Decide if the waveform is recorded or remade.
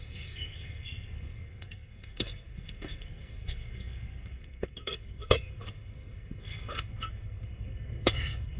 remade